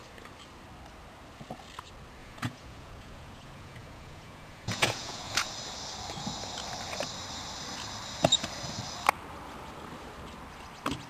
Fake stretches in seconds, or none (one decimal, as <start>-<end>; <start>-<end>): 2.2-5.5